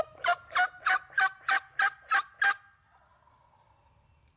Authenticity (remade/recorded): recorded